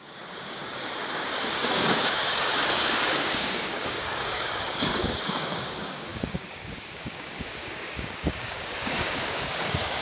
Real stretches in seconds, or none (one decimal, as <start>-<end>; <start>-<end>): none